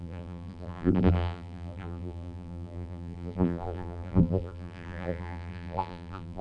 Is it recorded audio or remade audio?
remade